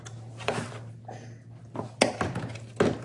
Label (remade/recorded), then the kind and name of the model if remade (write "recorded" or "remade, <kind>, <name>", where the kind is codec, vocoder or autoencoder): recorded